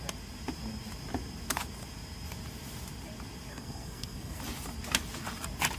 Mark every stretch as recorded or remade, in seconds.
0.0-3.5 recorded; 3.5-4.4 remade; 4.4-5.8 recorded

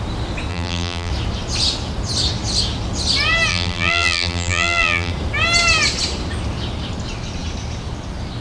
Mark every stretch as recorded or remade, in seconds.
0.0-0.5 recorded; 0.5-1.1 remade; 1.1-3.5 recorded; 3.5-5.1 remade; 5.1-8.4 recorded